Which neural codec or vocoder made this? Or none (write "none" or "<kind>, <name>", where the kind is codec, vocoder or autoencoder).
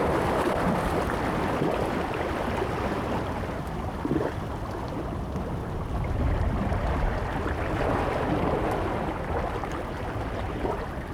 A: none